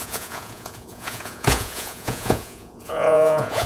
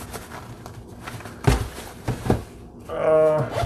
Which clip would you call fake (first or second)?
first